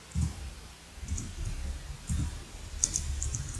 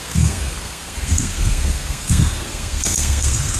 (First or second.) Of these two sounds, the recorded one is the first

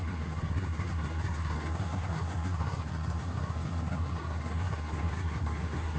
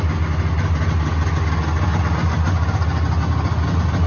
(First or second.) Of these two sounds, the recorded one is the second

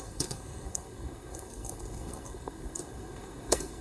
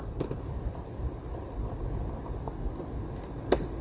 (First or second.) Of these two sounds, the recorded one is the second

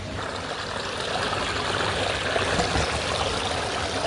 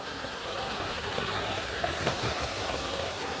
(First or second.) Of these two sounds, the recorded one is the first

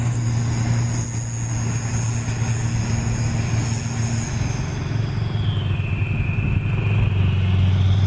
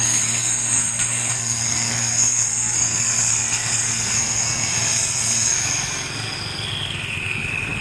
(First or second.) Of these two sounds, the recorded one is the first